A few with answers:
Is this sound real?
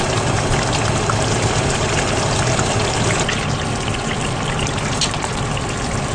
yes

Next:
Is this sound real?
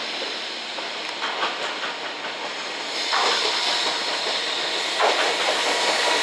yes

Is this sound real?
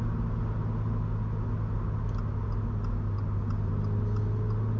yes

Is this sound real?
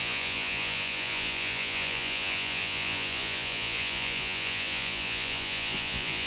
no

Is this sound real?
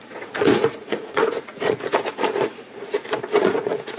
no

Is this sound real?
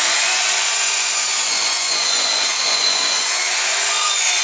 no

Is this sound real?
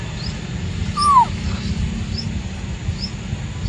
yes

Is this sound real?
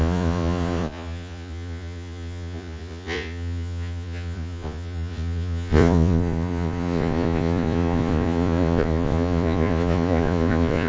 no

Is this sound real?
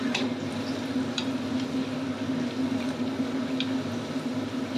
yes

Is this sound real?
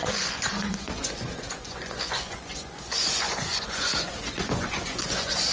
no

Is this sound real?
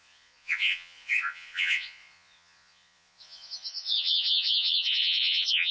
no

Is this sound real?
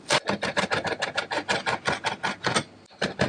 yes